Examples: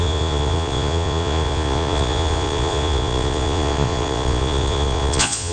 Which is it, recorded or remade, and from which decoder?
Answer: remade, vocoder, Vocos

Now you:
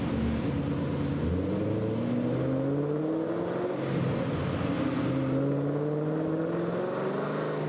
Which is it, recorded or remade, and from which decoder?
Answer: recorded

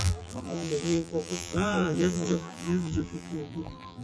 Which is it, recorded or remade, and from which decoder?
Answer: remade, vocoder, BigVGAN v2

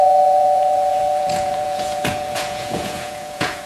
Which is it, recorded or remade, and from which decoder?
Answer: remade, vocoder, Vocos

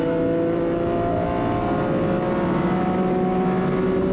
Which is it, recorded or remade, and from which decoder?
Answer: recorded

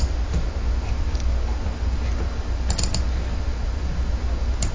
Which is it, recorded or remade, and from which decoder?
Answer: recorded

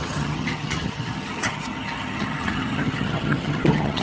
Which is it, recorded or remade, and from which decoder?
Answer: remade, vocoder, HiFi-GAN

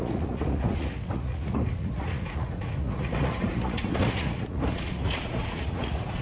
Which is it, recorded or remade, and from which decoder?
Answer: remade, vocoder, Vocos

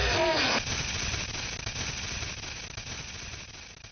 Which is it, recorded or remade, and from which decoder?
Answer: recorded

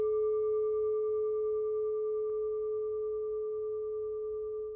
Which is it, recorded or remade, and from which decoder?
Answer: recorded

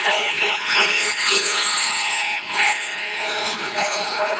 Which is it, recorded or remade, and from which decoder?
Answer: remade, codec, HILCodec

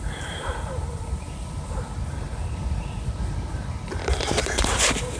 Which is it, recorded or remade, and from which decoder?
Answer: remade, vocoder, BigVGAN v2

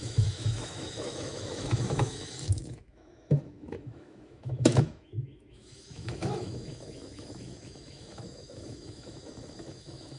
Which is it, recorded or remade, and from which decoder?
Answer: remade, autoencoder, DAC-VAE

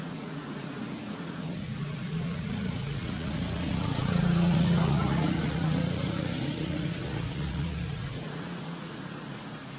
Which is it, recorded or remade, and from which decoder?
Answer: remade, vocoder, Vocos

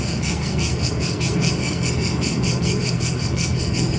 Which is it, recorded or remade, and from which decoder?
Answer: remade, codec, SNAC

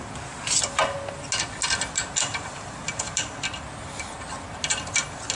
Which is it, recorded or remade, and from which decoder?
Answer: recorded